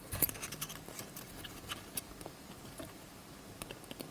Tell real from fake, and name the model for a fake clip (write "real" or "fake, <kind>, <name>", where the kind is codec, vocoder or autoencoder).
real